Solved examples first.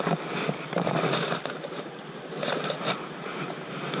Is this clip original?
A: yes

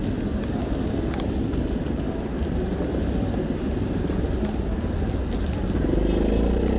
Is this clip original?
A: yes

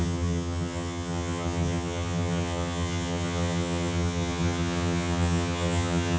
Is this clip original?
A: no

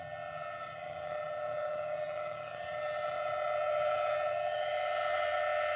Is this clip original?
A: no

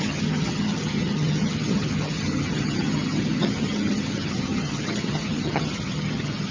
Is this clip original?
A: no